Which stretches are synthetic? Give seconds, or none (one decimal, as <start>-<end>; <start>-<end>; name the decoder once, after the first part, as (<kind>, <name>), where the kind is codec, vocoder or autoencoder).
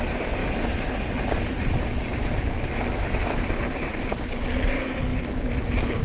none